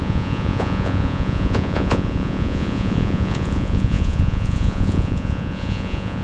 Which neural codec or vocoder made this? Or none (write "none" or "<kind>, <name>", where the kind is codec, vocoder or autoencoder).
vocoder, Vocos